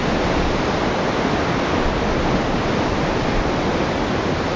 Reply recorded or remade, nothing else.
recorded